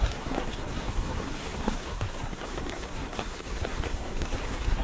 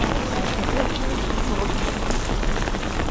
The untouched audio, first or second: second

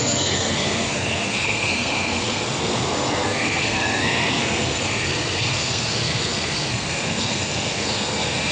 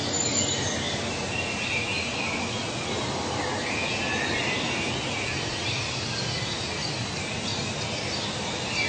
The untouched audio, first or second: second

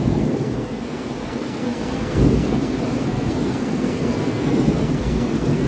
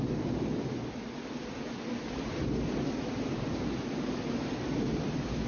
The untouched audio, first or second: second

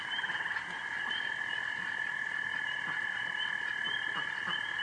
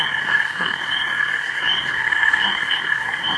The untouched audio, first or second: first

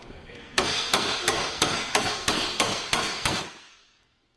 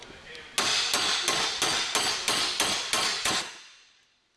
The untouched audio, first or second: second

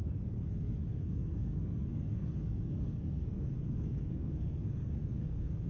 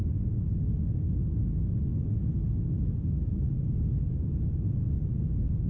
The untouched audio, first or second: second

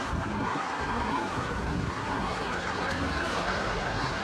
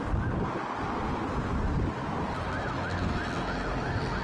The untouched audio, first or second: second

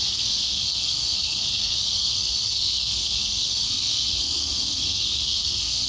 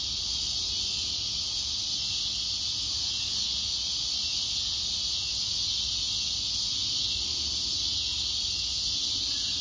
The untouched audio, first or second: second